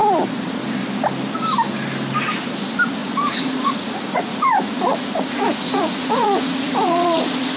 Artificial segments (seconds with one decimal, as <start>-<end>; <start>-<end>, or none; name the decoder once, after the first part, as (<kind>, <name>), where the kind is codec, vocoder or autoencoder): 3.0-7.6 (vocoder, Vocos)